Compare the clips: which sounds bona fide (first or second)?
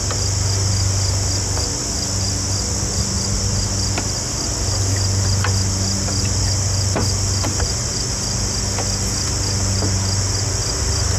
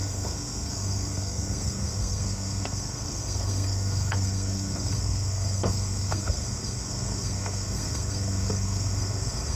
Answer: first